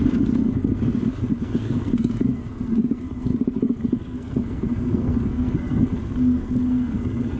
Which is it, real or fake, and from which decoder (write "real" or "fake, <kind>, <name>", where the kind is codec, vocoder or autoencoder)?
fake, codec, SNAC